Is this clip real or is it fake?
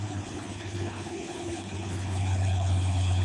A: fake